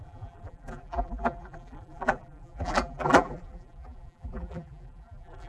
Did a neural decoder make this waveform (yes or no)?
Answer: yes